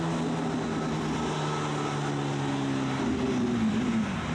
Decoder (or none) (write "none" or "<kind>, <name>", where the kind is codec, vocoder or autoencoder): none